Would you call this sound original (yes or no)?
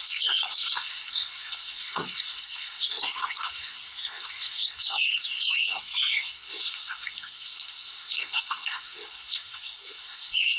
no